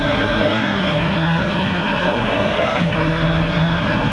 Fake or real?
fake